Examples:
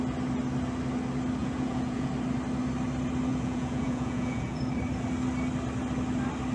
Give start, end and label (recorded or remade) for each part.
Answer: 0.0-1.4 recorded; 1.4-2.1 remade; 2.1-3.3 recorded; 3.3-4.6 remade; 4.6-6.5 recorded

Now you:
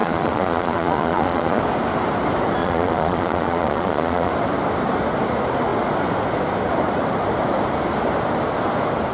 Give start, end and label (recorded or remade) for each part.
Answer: 0.0-1.6 remade; 1.6-2.6 recorded; 2.6-4.3 remade; 4.3-9.1 recorded

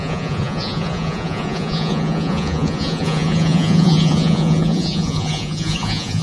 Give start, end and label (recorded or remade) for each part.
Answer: 0.0-6.2 remade

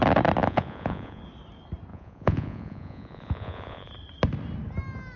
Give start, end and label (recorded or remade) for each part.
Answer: 0.0-0.4 recorded; 0.4-1.2 remade; 1.2-1.9 recorded; 1.9-3.9 remade; 3.9-5.2 recorded

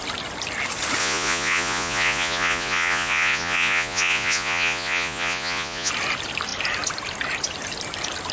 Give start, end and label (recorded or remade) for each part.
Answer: 0.0-1.0 recorded; 1.0-5.9 remade; 5.9-8.3 recorded

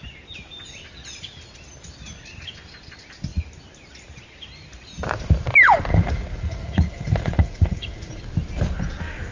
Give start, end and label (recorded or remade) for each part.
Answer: 0.0-5.9 recorded; 5.9-8.2 remade; 8.2-9.3 recorded

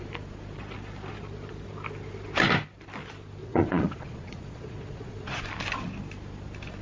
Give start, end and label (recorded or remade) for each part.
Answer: 0.0-3.4 recorded; 3.4-5.4 remade; 5.4-6.8 recorded